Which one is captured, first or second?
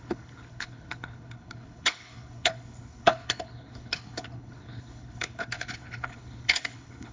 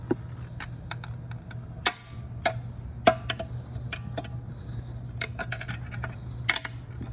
second